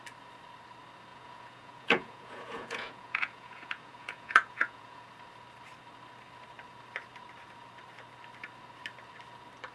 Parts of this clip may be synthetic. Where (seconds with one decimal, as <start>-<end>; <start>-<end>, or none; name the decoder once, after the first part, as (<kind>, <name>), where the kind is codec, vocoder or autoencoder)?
1.1-5.1 (vocoder, Vocos)